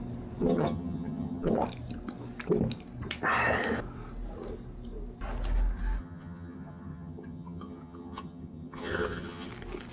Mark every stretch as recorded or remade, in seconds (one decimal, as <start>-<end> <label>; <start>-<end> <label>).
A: 0.0-0.4 recorded; 0.4-1.5 remade; 1.5-6.0 recorded; 6.0-9.5 remade; 9.5-9.9 recorded

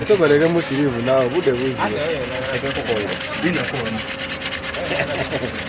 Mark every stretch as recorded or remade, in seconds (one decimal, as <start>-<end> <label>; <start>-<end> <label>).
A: 0.0-3.1 recorded; 3.1-3.9 remade; 3.9-5.7 recorded